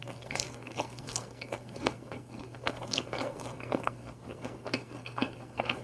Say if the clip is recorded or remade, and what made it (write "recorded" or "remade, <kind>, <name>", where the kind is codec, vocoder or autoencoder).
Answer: remade, codec, SNAC